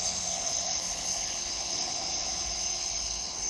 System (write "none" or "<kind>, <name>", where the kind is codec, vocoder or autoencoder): codec, HILCodec